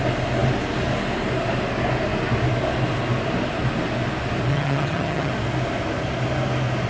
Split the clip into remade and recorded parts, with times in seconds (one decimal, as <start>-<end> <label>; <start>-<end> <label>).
0.0-4.5 recorded; 4.5-5.3 remade; 5.3-6.9 recorded